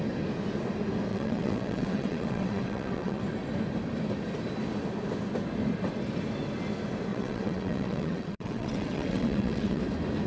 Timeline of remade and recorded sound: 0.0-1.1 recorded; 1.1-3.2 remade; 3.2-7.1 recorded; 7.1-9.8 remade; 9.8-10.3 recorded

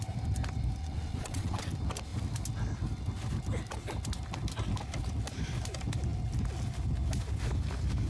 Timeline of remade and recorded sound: 0.0-0.8 recorded; 0.8-1.7 remade; 1.7-8.1 recorded

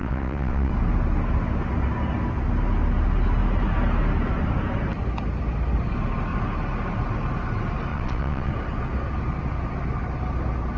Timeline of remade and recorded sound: 0.0-0.7 remade; 0.7-7.9 recorded; 7.9-8.5 remade; 8.5-10.8 recorded

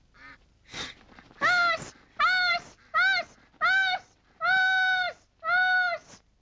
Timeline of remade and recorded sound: 0.0-6.4 recorded

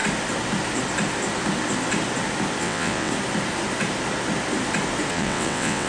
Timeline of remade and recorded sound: 0.0-2.6 recorded; 2.6-3.1 remade; 3.1-5.1 recorded; 5.1-5.9 remade

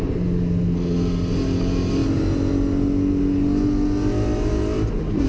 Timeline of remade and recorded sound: 0.0-5.3 recorded

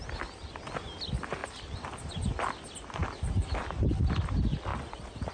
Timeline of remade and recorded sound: 0.0-5.3 recorded

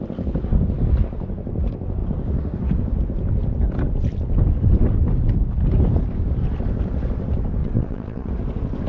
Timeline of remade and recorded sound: 0.0-7.6 recorded; 7.6-8.3 remade; 8.3-8.9 recorded